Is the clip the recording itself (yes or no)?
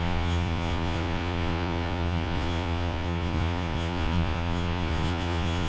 no